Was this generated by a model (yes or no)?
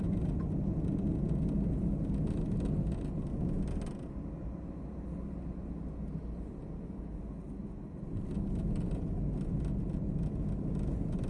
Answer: no